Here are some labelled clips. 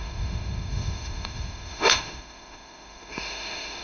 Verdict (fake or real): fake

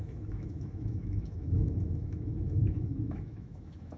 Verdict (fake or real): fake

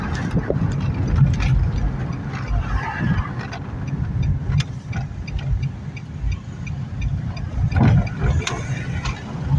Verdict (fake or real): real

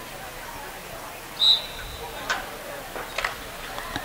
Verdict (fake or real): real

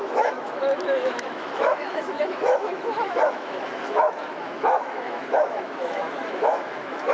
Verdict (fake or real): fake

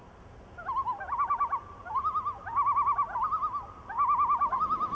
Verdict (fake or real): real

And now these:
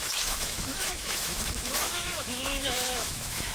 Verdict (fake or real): fake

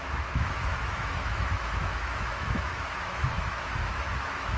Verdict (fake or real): fake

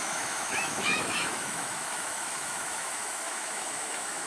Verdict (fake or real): fake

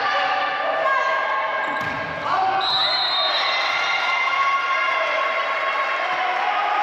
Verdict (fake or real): real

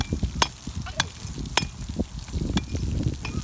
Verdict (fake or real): real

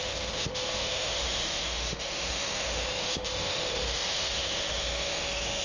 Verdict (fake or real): fake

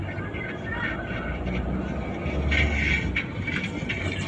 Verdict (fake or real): real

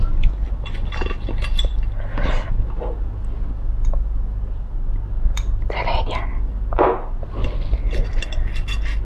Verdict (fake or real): real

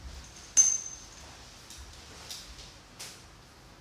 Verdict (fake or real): real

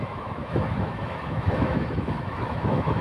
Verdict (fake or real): fake